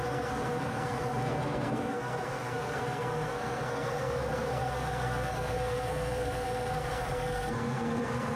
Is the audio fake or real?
fake